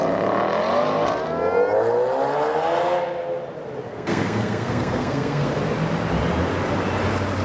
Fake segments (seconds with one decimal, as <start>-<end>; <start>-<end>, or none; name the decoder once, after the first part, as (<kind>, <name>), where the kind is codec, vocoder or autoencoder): 3.9-5.5 (codec, SNAC)